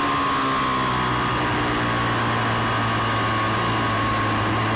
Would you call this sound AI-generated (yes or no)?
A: no